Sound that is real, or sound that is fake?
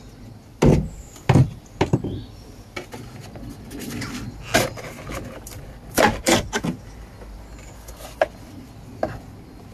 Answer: real